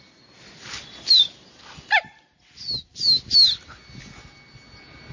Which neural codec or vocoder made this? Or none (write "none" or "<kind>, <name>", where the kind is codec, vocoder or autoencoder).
none